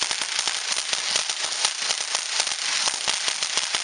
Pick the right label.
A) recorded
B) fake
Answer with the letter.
A